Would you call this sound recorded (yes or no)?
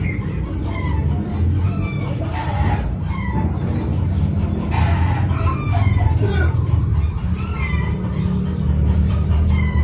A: yes